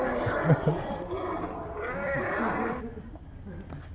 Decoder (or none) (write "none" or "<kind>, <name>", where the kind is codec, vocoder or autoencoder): none